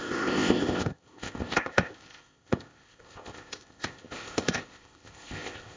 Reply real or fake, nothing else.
fake